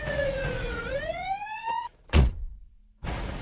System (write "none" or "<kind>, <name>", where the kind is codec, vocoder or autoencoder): vocoder, Vocos